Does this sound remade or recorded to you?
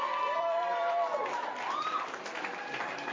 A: remade